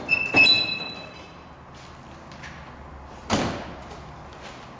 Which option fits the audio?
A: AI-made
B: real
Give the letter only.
B